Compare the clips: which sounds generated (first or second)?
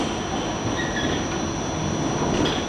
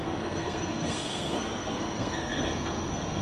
second